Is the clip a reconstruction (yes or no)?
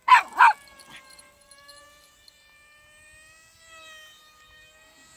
yes